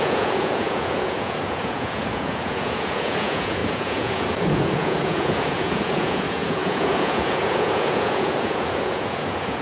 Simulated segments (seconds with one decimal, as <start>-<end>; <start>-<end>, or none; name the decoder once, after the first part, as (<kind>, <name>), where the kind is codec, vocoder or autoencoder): 0.0-9.6 (vocoder, Vocos)